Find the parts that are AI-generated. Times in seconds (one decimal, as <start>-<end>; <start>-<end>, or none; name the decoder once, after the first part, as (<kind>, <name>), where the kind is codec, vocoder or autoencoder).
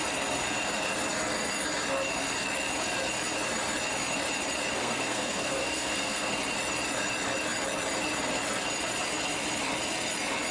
4.8-6.3 (codec, SNAC)